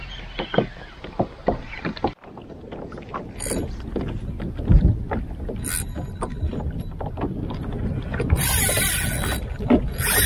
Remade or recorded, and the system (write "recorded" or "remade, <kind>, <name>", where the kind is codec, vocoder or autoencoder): recorded